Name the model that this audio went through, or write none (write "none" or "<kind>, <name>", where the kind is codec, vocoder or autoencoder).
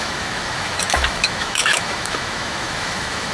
autoencoder, DAC-VAE